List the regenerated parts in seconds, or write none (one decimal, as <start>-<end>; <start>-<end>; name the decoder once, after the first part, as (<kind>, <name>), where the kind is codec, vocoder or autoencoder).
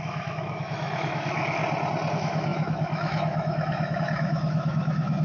0.0-1.6 (autoencoder, DAC-VAE); 2.1-5.2